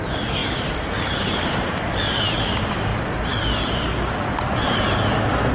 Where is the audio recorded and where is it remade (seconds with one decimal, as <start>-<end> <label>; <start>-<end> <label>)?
0.0-2.9 remade; 2.9-4.5 recorded; 4.5-5.5 remade